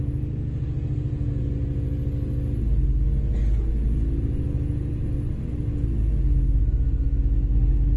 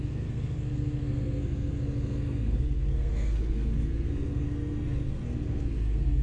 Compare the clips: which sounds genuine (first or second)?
first